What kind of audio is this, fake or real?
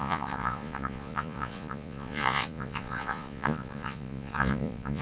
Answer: fake